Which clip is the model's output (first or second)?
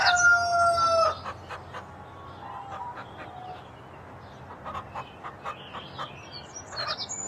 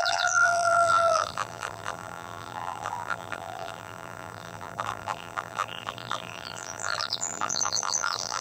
second